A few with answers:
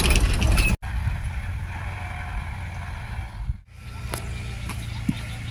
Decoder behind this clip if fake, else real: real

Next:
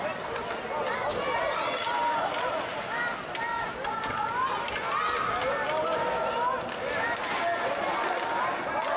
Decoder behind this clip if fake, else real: real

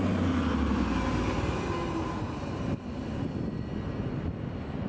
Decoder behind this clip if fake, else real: real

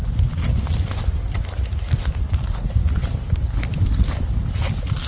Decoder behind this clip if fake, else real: real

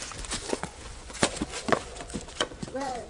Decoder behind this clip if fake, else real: fake, vocoder, Vocos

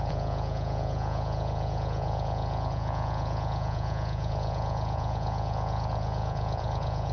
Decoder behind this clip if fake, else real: fake, vocoder, Vocos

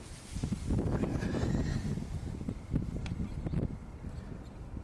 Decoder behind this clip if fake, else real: real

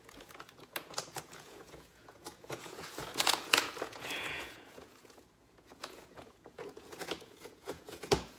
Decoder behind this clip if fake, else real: fake, vocoder, Vocos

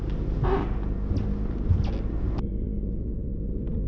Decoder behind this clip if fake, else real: real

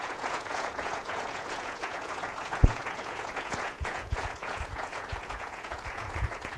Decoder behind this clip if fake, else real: fake, vocoder, Vocos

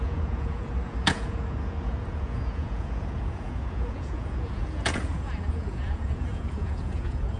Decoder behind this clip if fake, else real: fake, vocoder, Vocos